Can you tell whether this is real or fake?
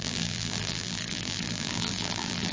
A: fake